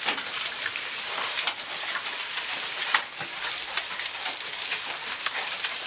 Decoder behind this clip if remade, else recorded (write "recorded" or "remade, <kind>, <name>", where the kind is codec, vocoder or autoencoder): remade, vocoder, BigVGAN v2